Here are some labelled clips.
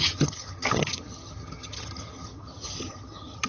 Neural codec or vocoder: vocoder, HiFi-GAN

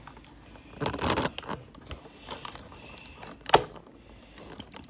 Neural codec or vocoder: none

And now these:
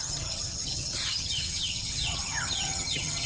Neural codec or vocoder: vocoder, HiFi-GAN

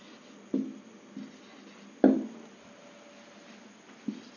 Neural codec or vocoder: none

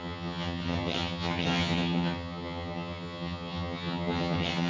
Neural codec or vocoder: vocoder, HiFi-GAN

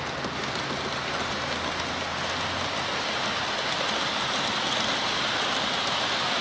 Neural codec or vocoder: none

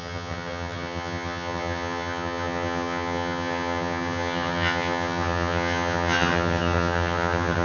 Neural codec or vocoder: vocoder, HiFi-GAN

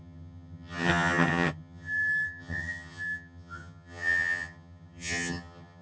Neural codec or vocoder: vocoder, HiFi-GAN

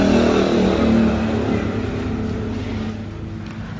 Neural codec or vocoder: none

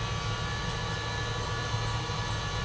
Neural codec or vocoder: none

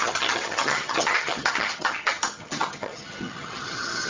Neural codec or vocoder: vocoder, HiFi-GAN